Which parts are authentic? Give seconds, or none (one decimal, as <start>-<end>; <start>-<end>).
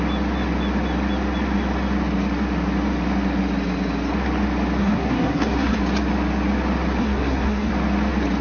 0.0-4.8; 5.8-7.0; 7.7-8.4